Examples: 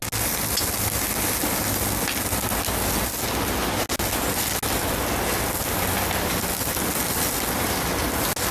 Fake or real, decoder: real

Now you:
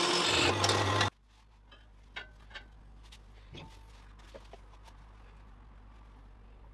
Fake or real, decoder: real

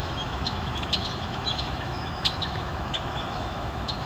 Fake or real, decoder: fake, autoencoder, DAC-VAE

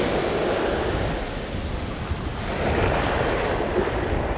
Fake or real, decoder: real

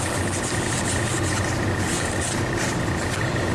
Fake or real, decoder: real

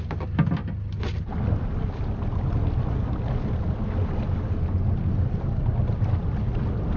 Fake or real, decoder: real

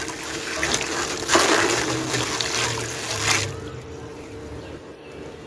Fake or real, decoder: real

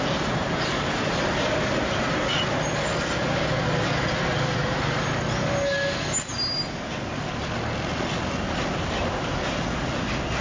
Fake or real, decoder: real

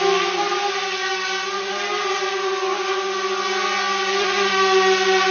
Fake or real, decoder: real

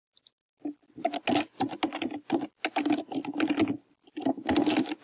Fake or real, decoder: real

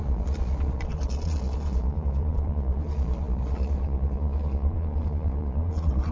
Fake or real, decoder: fake, vocoder, Vocos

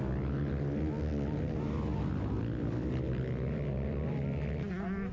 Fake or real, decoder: real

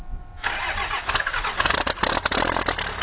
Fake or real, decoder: real